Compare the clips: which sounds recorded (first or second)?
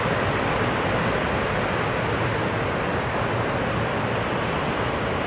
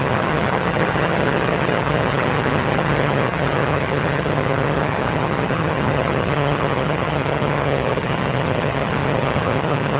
first